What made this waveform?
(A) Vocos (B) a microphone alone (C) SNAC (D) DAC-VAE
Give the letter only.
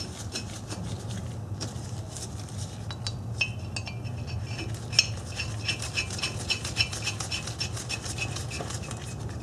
B